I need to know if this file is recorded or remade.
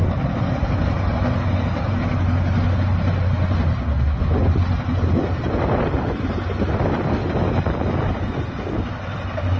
recorded